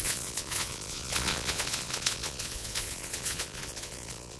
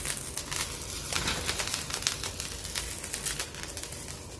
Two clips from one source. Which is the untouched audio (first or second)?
second